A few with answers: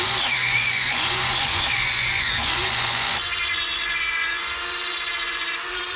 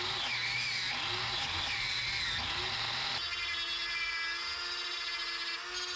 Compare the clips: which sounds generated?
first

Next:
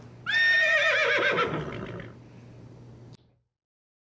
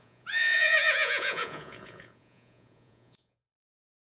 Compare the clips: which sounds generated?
second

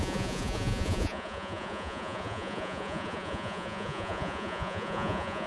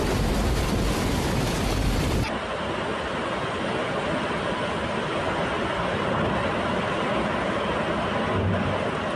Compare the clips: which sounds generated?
first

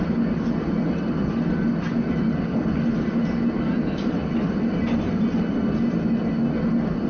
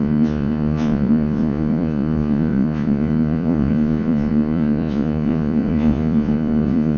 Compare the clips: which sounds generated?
second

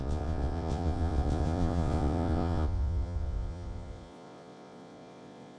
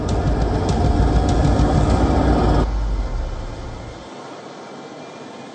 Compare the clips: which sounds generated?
first